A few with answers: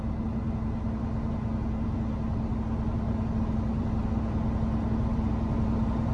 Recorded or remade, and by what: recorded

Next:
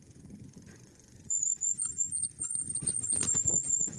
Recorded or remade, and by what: remade, vocoder, Vocos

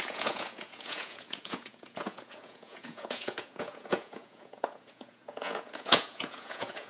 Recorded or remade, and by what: remade, vocoder, Vocos